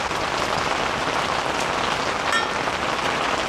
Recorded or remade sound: recorded